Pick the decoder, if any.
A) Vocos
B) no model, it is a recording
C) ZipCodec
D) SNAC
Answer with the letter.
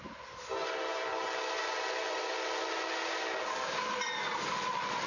B